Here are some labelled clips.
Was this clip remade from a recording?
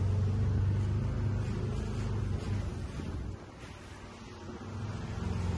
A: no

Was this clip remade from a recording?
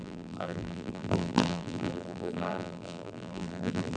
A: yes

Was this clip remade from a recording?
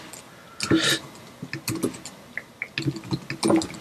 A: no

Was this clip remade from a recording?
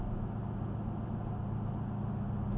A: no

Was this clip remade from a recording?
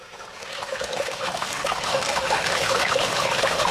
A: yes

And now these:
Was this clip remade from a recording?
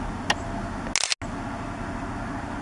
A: no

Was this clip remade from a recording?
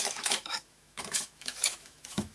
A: yes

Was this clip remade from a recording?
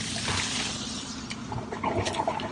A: no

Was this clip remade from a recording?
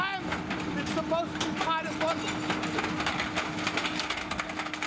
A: no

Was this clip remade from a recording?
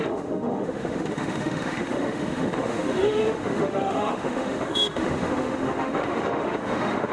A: yes